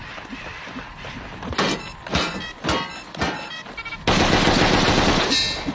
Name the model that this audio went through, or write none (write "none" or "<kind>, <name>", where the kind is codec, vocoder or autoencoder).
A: none